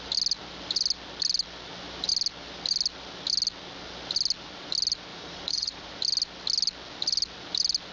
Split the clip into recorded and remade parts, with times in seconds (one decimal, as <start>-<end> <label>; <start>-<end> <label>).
0.0-5.1 recorded; 5.1-5.9 remade; 5.9-7.9 recorded